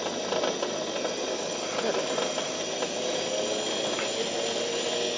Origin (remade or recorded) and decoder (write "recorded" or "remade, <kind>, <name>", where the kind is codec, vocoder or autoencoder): recorded